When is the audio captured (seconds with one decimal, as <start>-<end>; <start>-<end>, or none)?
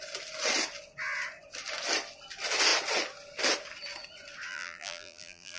0.0-4.5